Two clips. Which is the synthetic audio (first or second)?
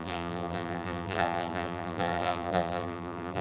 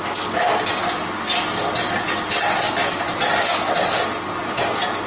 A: first